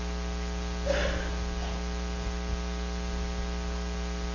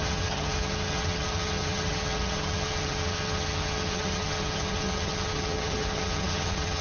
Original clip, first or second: first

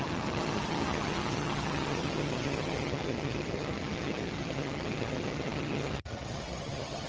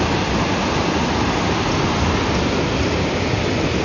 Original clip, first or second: second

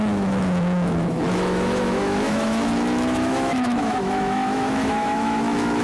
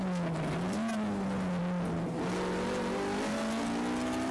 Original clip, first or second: second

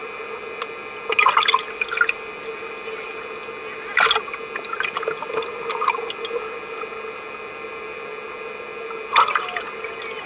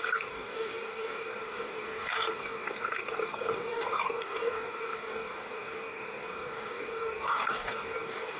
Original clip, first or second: first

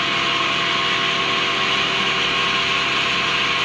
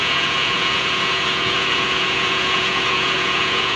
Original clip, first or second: first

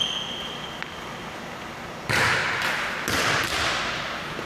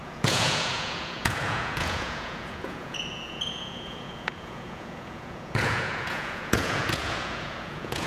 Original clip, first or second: first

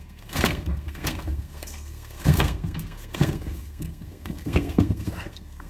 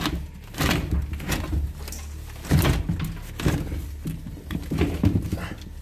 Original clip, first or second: second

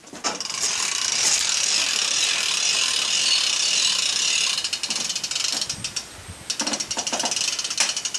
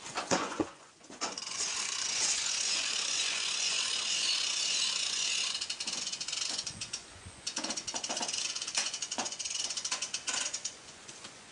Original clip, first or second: first